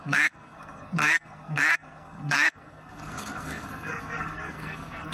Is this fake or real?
fake